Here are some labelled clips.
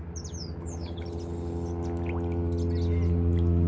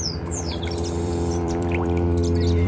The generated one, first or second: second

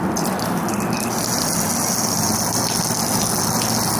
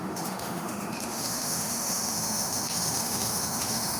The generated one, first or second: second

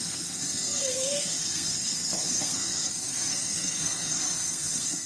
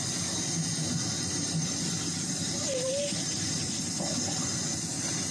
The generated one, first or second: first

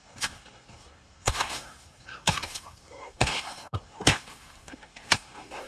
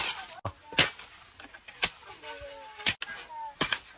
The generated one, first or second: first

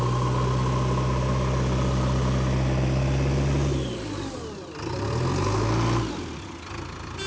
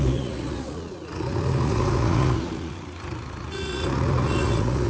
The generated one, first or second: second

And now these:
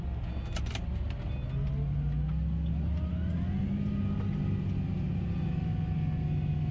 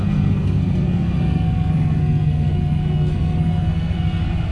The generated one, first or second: second